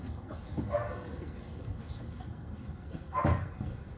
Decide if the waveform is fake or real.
fake